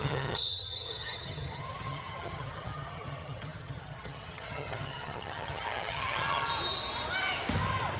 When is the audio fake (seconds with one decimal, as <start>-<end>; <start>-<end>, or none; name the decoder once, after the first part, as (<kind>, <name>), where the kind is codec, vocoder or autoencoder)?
0.0-6.5 (vocoder, HiFi-GAN)